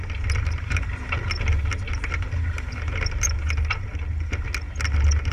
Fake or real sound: real